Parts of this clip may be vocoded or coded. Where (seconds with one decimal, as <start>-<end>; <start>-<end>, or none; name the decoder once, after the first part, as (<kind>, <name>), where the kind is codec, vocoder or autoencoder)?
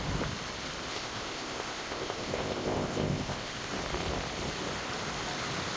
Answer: 0.9-3.7 (codec, ZipCodec)